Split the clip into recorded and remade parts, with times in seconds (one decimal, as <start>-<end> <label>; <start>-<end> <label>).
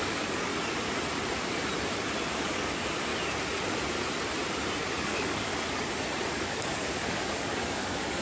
0.0-0.5 remade; 0.5-2.3 recorded; 2.3-3.1 remade; 3.1-4.9 recorded; 4.9-5.5 remade; 5.5-6.4 recorded; 6.4-8.2 remade